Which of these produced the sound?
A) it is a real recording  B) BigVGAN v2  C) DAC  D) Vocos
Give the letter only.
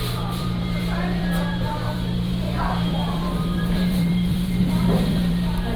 B